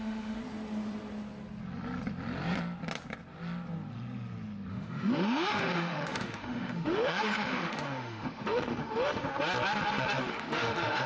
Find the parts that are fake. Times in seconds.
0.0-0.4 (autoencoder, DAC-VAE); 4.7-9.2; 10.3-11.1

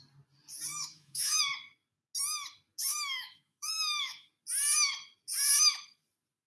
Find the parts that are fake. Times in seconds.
0.7-1.4 (autoencoder, DAC-VAE); 2.9-4.3

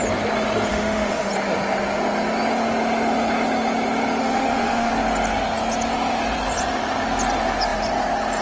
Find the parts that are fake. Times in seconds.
0.7-1.3 (autoencoder, DAC-VAE); 4.2-4.9

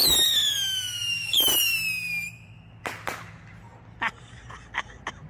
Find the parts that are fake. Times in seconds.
none

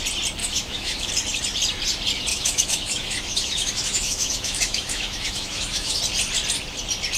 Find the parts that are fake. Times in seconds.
0.4-1.1 (autoencoder, DAC-VAE); 2.3-6.0

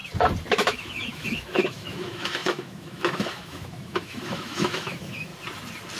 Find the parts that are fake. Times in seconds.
0.5-5.3 (autoencoder, DAC-VAE)